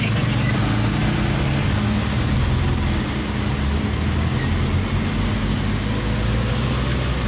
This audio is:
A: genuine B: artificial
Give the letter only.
A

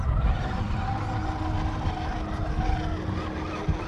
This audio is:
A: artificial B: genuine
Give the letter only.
B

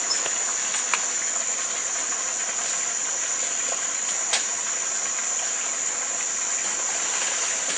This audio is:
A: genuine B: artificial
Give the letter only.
A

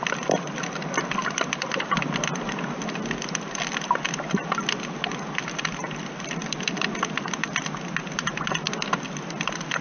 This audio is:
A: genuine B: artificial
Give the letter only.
A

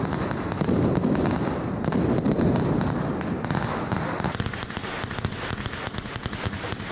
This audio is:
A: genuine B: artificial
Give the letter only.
A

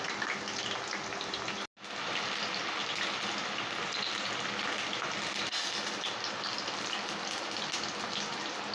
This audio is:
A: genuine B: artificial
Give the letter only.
A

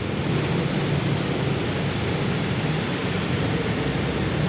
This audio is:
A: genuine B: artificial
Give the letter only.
A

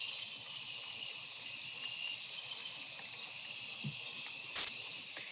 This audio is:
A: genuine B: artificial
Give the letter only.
B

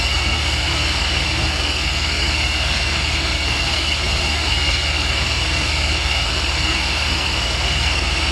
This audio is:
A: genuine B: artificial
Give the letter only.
B